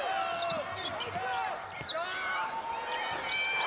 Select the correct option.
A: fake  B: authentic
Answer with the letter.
B